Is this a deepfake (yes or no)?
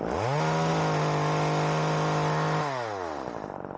no